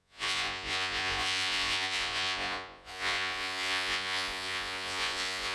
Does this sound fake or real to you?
fake